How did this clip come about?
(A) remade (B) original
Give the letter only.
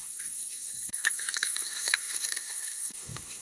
A